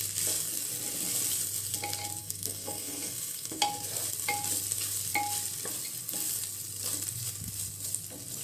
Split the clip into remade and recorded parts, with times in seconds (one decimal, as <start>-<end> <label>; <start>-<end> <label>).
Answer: 0.0-2.2 recorded; 2.2-3.6 remade; 3.6-8.4 recorded